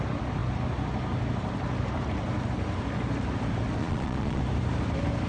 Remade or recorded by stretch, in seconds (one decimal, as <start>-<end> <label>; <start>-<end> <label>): 0.0-3.8 recorded; 3.8-4.4 remade; 4.4-5.3 recorded